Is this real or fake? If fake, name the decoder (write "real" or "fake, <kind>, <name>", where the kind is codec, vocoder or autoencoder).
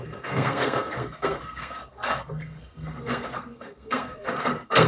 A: fake, codec, SNAC